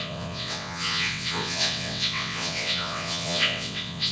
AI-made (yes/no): yes